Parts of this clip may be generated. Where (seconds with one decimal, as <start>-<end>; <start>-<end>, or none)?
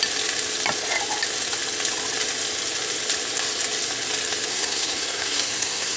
4.5-6.0